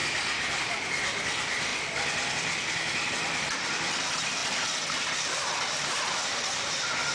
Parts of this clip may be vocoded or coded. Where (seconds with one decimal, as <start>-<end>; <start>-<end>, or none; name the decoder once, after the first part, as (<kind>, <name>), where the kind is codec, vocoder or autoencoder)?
0.6-7.1 (vocoder, BigVGAN v2)